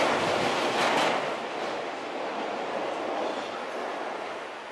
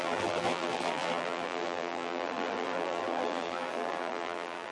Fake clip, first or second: second